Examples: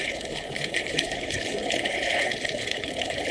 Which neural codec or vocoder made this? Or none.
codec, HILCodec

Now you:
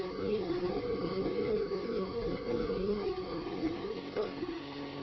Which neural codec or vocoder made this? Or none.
codec, SNAC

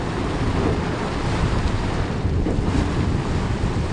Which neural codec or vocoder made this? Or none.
none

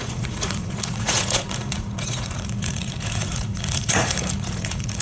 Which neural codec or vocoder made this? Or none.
vocoder, Vocos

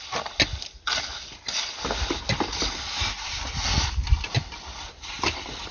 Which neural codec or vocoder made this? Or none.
none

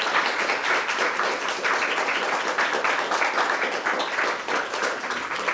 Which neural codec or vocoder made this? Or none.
none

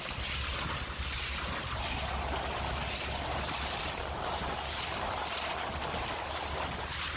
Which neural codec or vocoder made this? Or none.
none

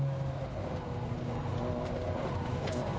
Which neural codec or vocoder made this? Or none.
none